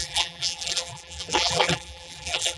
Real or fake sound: fake